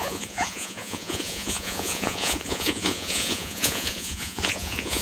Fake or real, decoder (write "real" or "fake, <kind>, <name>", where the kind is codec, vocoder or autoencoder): fake, vocoder, Vocos